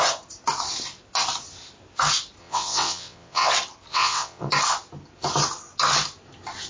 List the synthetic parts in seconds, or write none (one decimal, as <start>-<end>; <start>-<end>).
2.4-3.5; 3.9-4.5

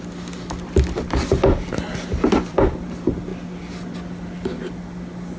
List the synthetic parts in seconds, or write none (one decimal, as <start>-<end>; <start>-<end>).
none

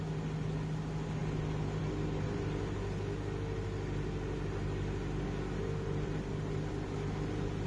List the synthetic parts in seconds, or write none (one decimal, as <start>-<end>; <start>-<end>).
none

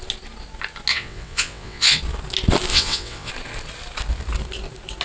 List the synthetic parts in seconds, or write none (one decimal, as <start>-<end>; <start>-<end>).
0.9-2.0; 2.7-3.3

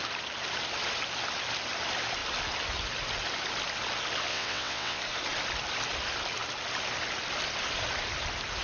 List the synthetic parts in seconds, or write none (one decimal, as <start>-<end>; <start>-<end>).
4.3-5.0

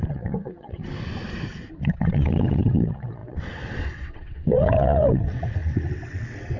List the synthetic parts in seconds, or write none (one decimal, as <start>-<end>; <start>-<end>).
0.0-0.8; 1.8-6.6

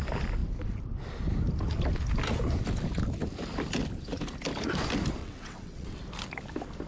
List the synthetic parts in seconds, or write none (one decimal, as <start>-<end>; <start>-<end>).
5.2-6.0

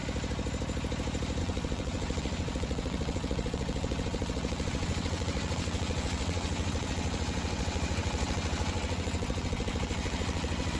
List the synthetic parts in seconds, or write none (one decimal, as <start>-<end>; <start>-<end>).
1.4-10.8